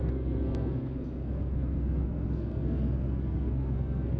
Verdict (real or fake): fake